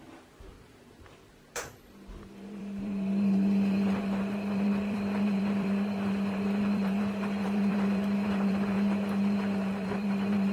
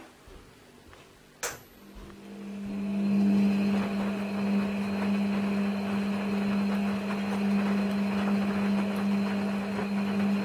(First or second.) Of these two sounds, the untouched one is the second